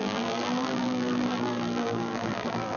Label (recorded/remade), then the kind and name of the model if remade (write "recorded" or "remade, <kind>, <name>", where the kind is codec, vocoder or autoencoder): remade, vocoder, BigVGAN v2